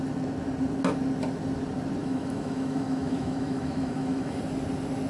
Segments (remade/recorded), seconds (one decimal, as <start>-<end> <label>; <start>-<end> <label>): 0.0-2.0 recorded; 2.0-4.4 remade; 4.4-5.1 recorded